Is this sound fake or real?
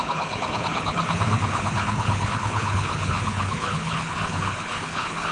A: fake